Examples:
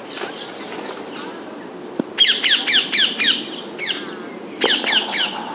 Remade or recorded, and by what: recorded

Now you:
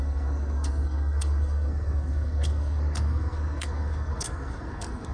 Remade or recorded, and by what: remade, codec, SNAC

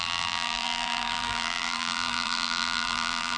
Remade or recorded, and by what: remade, vocoder, BigVGAN v2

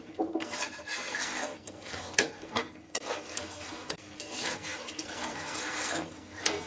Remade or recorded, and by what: remade, codec, SNAC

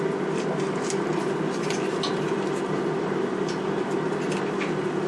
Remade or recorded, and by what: recorded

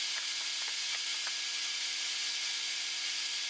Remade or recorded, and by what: recorded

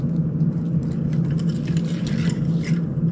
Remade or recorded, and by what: recorded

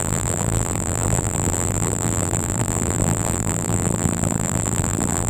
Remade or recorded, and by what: remade, vocoder, BigVGAN v2